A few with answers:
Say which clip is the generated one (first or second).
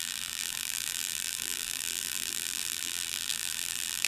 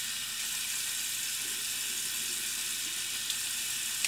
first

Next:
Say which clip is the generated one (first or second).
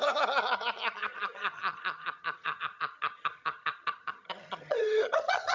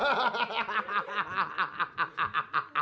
first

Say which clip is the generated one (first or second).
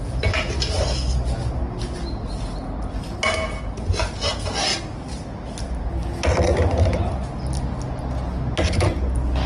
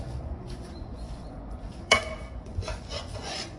second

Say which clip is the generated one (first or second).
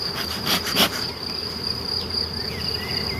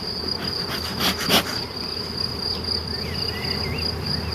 first